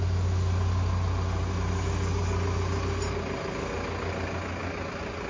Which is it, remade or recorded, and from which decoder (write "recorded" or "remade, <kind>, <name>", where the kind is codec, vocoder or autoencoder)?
recorded